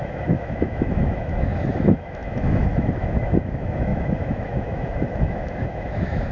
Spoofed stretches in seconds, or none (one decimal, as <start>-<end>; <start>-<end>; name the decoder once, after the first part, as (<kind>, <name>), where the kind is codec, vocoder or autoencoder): 0.0-6.3 (autoencoder, DAC-VAE)